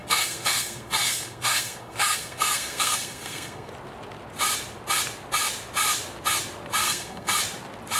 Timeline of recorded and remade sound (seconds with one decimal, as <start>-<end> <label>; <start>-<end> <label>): 0.0-3.7 remade; 3.7-6.8 recorded; 6.8-7.3 remade; 7.3-8.0 recorded